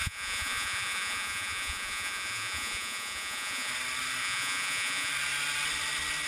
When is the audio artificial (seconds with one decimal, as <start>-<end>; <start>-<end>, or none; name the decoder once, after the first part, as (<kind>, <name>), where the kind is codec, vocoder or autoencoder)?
0.0-3.7 (vocoder, Vocos); 4.2-5.1